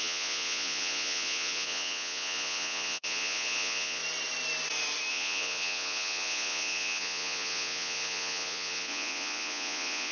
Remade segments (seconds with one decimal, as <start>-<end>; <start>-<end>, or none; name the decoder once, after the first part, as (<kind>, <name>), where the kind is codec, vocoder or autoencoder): 0.0-4.0 (vocoder, Vocos); 5.1-10.1

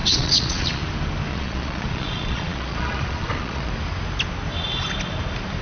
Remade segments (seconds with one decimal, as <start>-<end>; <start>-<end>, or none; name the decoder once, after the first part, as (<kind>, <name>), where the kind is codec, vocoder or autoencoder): 0.0-0.8 (vocoder, Vocos); 1.3-3.7

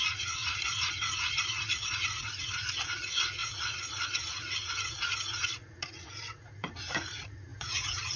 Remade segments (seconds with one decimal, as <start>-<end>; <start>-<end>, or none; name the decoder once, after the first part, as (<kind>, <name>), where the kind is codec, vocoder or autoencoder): 0.0-8.2 (vocoder, Vocos)

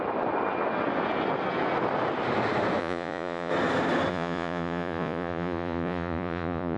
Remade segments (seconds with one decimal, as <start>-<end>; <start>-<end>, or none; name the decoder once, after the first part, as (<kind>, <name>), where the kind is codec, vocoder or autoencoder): 2.8-3.5 (vocoder, Vocos); 4.1-6.8

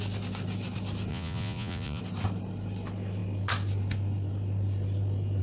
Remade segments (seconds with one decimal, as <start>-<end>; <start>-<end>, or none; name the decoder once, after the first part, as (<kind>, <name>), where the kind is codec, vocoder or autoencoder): 1.1-2.0 (vocoder, Vocos)

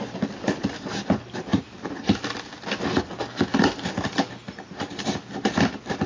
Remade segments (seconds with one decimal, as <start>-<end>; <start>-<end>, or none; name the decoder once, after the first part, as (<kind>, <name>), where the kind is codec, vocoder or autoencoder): none

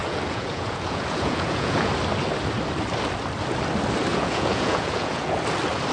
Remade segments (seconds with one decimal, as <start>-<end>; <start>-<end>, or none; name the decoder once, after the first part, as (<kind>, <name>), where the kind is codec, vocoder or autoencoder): 0.0-1.9 (vocoder, Vocos); 4.1-5.4

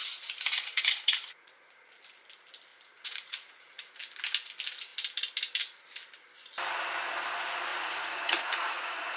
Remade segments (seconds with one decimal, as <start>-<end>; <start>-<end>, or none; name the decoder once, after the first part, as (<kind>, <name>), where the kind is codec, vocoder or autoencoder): 0.0-1.9 (vocoder, Vocos); 2.7-4.0; 7.7-9.2